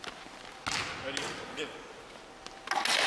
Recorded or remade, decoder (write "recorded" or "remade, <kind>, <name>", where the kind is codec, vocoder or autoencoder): recorded